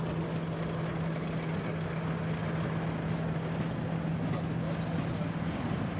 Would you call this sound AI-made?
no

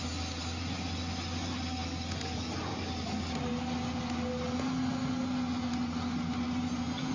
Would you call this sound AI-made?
no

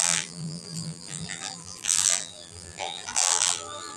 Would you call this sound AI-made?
yes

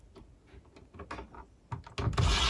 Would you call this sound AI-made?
no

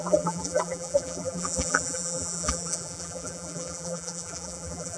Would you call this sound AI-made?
yes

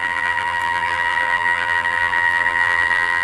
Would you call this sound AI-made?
yes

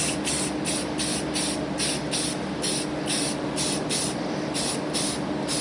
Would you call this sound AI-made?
no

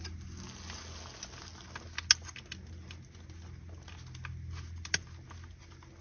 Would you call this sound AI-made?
no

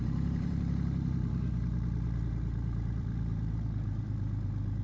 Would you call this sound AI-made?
yes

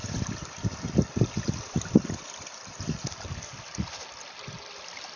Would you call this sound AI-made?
yes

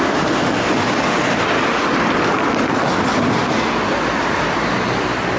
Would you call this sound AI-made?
no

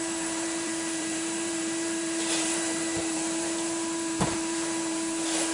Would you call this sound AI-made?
yes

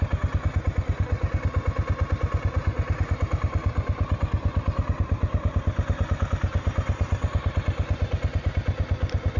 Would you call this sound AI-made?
no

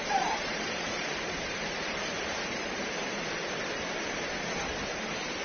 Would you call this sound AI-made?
yes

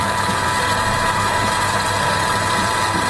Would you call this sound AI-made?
yes